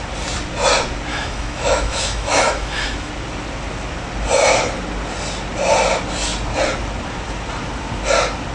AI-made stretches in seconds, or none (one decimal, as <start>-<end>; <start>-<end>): 1.1-3.1